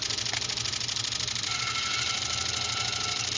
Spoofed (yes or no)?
no